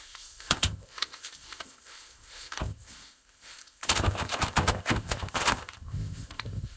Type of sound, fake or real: fake